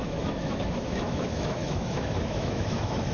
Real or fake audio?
fake